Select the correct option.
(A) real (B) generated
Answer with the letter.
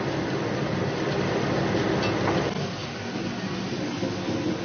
A